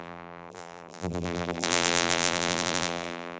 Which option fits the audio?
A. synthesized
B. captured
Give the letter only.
A